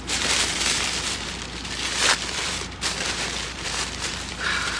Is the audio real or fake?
fake